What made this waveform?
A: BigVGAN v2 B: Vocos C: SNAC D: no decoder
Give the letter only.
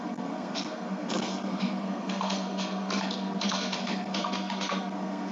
C